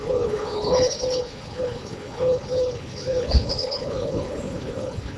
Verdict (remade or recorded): remade